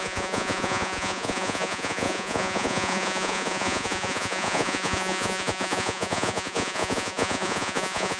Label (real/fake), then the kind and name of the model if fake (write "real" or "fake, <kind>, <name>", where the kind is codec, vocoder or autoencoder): fake, vocoder, Vocos